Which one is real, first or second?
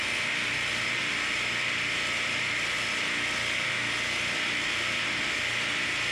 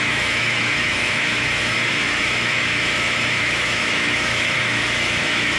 first